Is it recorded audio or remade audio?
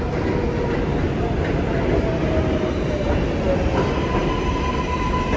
recorded